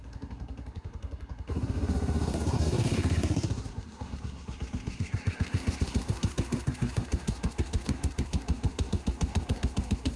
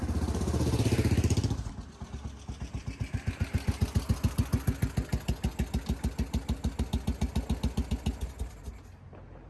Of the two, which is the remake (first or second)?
first